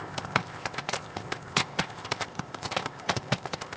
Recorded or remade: remade